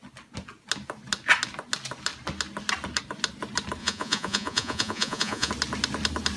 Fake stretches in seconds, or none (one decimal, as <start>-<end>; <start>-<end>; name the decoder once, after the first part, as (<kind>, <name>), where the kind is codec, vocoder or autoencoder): 3.8-5.5 (vocoder, Vocos)